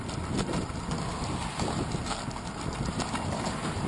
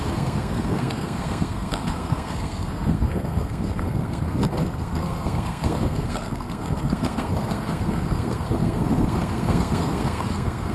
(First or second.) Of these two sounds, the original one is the first